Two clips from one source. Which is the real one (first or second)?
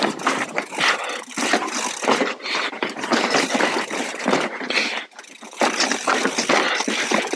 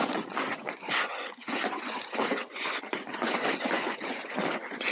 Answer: first